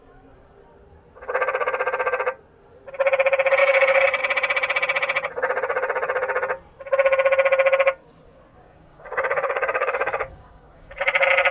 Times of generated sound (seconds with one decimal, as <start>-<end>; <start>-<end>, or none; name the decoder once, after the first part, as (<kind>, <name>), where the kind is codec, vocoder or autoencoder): 3.6-4.2 (codec, DAC); 8.5-11.0